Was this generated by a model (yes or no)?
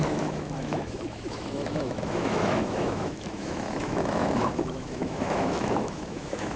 yes